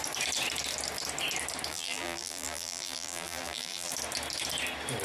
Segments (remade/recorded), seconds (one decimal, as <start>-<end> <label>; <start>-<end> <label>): 0.0-1.7 recorded; 1.7-3.9 remade; 3.9-5.0 recorded